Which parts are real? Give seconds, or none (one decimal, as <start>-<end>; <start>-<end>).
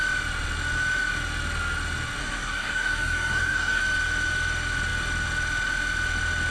0.0-2.2; 3.8-6.5